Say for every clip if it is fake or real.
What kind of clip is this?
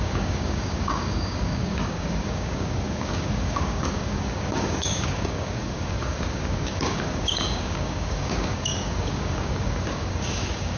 fake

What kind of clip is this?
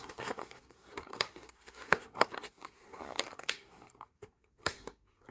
fake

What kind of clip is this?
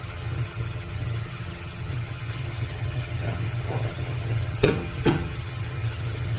fake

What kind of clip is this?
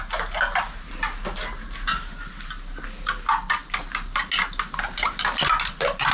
real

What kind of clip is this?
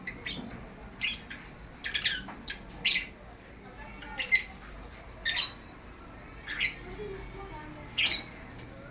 real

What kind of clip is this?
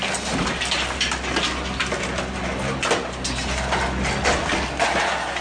real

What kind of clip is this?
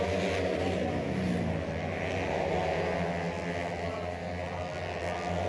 real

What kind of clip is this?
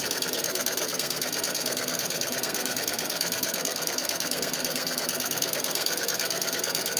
fake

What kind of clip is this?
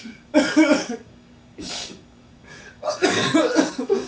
fake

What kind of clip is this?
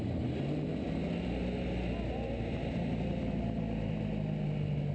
real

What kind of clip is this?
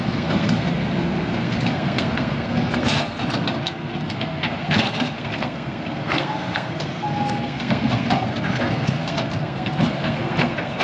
fake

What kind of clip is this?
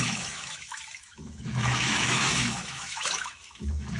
fake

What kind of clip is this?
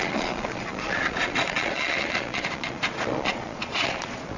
fake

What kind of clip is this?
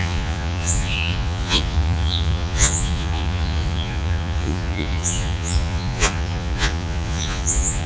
fake